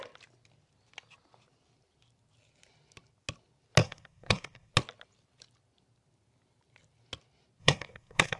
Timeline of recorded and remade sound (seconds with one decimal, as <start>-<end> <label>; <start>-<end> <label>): 0.0-3.8 recorded; 3.8-4.7 remade; 4.7-7.6 recorded; 7.6-8.4 remade